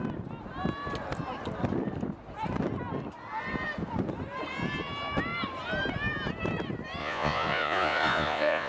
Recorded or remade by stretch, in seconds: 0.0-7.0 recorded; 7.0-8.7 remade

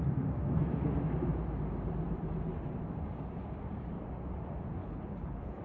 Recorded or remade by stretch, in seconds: 0.0-4.8 recorded; 4.8-5.6 remade

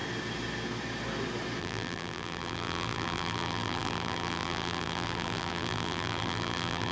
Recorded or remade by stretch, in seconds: 0.0-1.6 recorded; 1.6-6.9 remade

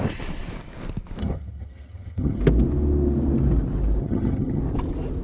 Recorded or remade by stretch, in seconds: 0.0-1.2 recorded; 1.2-2.4 remade; 2.4-4.0 recorded; 4.0-4.6 remade; 4.6-5.2 recorded

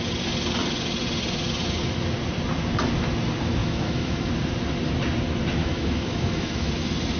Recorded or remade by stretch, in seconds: 0.0-3.6 recorded; 3.6-4.3 remade; 4.3-5.6 recorded; 5.6-6.7 remade; 6.7-7.2 recorded

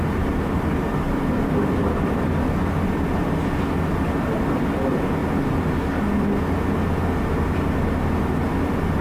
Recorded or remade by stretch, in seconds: 0.0-5.2 remade; 5.2-7.9 recorded; 7.9-9.0 remade

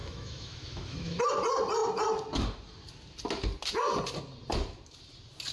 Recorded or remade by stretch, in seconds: 0.0-1.2 remade; 1.2-5.5 recorded

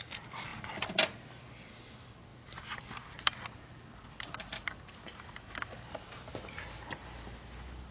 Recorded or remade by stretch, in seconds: 0.0-7.9 recorded